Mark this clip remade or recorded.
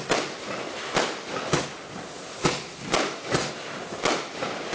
recorded